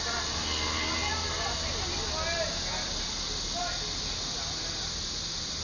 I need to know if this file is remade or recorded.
recorded